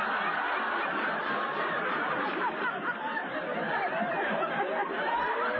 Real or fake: real